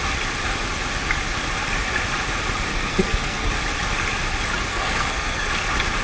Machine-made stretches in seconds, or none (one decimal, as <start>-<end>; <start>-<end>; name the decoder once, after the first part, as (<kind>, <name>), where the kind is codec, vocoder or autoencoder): 2.7-3.5 (codec, SNAC); 4.7-5.5